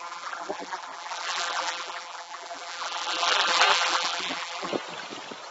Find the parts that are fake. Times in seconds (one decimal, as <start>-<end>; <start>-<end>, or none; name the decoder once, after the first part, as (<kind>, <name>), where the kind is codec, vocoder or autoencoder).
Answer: 0.0-4.7 (vocoder, BigVGAN v2)